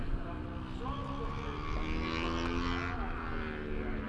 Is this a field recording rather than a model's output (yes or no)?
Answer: yes